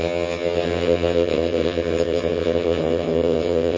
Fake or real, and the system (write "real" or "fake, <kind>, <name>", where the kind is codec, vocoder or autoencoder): fake, vocoder, HiFi-GAN